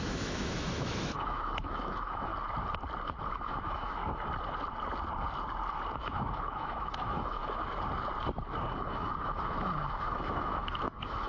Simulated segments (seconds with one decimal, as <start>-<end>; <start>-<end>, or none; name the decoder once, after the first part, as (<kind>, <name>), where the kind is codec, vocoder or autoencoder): 0.0-2.3 (autoencoder, DAC-VAE); 3.3-4.0; 6.0-7.4; 8.8-11.3